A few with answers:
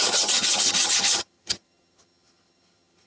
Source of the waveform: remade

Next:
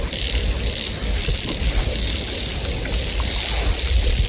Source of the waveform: recorded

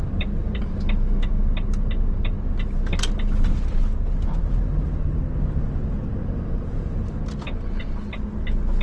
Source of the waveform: recorded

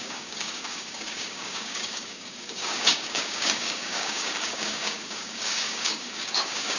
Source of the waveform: remade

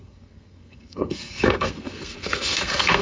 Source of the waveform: remade